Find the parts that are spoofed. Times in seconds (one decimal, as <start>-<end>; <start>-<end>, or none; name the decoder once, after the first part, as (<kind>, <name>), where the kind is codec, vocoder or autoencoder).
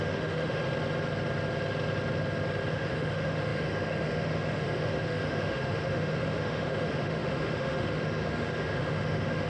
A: 0.0-0.6 (autoencoder, DAC-VAE); 2.7-9.5